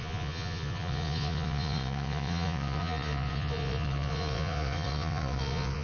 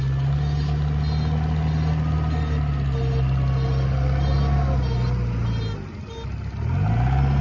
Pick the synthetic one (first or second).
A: first